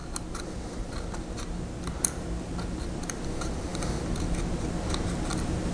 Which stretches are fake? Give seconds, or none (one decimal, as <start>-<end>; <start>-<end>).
none